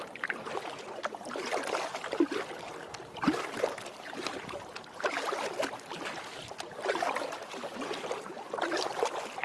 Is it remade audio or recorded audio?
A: recorded